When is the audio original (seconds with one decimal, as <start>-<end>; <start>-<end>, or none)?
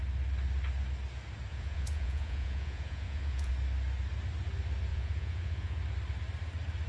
0.0-1.5; 3.5-4.9; 5.8-6.9